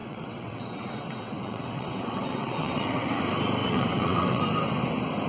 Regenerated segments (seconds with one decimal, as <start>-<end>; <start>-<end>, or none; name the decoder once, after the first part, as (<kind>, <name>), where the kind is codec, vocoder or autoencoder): 0.0-3.2 (vocoder, WaveNeXt); 3.6-4.4